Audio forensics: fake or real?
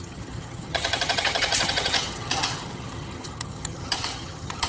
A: fake